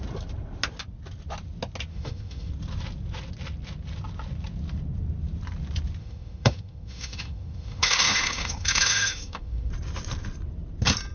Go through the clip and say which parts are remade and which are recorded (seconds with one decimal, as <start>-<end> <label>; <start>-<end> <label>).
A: 0.0-1.9 recorded; 1.9-2.5 remade; 2.5-6.0 recorded; 6.0-9.7 remade; 9.7-11.1 recorded